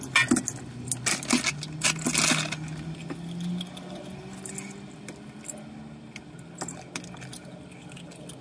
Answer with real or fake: real